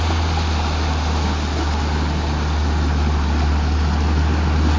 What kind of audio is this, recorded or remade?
recorded